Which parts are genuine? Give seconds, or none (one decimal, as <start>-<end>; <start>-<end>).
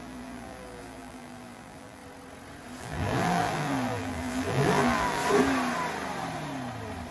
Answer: 2.0-2.8; 5.2-7.1